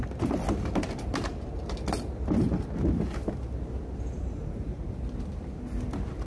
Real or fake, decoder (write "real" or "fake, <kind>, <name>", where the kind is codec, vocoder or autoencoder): real